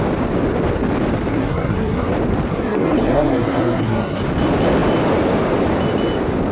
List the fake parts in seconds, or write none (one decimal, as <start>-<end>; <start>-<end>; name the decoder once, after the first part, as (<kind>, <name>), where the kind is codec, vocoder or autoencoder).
1.3-2.1 (codec, SNAC); 2.5-4.2